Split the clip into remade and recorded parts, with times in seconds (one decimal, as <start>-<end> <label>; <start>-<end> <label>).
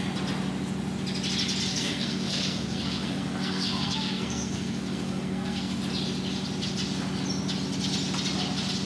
0.0-1.7 recorded; 1.7-5.8 remade; 5.8-8.9 recorded